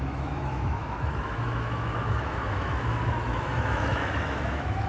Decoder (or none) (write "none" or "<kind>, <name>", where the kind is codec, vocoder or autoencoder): autoencoder, DAC-VAE